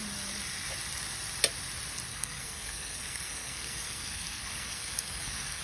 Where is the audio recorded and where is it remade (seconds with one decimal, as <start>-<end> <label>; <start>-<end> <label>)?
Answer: 0.0-2.1 recorded; 2.1-5.6 remade